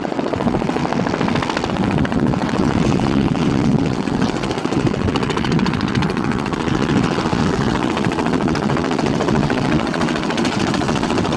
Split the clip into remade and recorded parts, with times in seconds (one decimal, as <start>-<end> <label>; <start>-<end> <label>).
0.0-0.8 remade; 0.8-1.7 recorded; 1.7-11.4 remade